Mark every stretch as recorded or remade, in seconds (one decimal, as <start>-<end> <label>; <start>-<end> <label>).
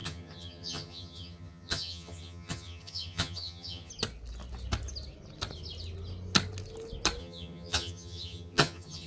0.0-3.9 remade; 3.9-7.2 recorded; 7.2-9.1 remade